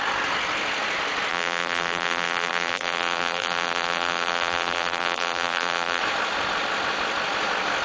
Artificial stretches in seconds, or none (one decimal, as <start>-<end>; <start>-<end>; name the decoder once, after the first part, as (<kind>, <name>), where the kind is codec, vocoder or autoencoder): 1.3-6.0 (vocoder, BigVGAN v2)